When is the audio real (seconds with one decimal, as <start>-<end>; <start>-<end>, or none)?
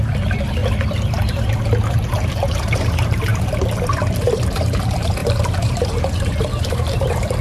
0.6-1.9; 3.3-4.2